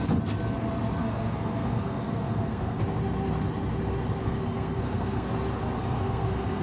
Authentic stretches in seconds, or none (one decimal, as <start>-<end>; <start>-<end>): 0.0-1.0; 2.8-4.2; 5.3-5.8